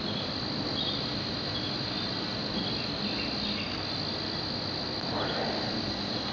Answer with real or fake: real